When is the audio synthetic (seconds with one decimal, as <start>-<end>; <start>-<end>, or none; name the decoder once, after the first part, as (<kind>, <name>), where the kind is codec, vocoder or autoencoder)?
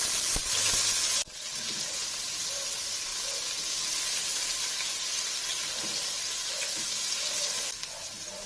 0.0-0.4 (vocoder, BigVGAN v2); 1.7-3.1; 8.0-8.5